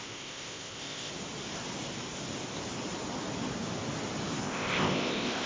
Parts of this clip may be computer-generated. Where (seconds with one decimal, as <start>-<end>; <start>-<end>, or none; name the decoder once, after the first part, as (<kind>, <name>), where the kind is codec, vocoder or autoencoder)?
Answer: 0.0-1.1 (codec, ZipCodec); 4.4-5.5